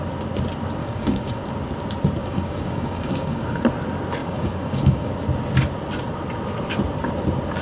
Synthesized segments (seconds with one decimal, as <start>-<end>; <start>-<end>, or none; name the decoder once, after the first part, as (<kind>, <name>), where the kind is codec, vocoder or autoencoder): 0.8-1.4 (codec, DAC); 2.2-3.6; 4.2-5.1